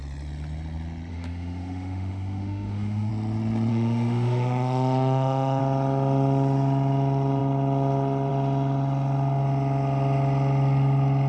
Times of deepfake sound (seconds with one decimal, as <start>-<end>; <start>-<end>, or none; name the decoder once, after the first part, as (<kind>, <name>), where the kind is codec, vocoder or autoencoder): 1.1-3.1 (autoencoder, DAC-VAE); 3.7-5.6